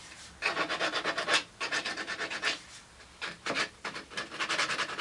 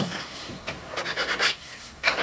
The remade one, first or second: second